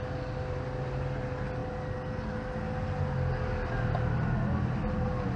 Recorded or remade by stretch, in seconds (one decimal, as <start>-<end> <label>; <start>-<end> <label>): 0.0-5.4 recorded